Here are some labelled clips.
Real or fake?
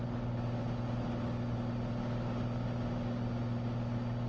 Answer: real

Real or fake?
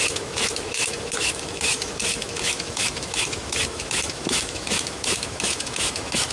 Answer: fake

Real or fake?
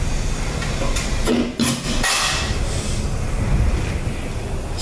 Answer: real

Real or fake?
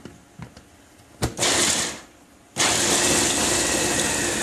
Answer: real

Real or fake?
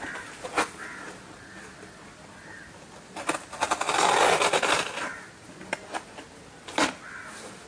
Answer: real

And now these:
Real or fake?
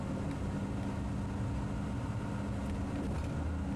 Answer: real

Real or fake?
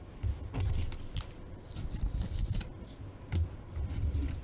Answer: real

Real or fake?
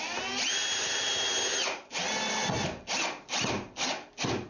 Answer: real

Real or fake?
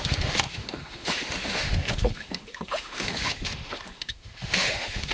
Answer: fake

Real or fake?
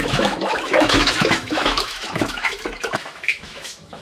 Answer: fake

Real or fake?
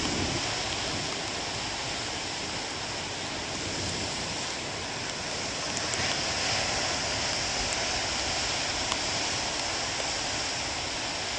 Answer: real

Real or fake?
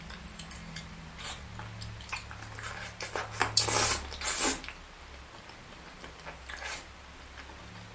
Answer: real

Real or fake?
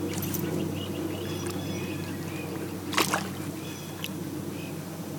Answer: real